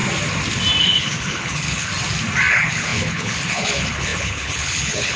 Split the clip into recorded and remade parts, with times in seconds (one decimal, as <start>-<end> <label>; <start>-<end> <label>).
0.0-0.8 recorded; 0.8-1.9 remade; 1.9-2.5 recorded; 2.5-5.2 remade